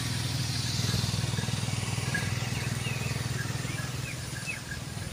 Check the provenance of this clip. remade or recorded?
recorded